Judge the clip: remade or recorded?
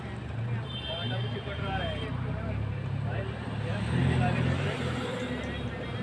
recorded